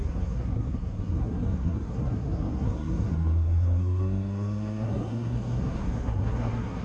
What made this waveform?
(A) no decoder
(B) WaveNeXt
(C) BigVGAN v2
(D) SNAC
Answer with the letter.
D